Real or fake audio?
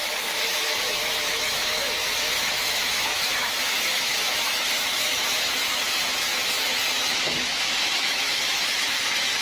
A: fake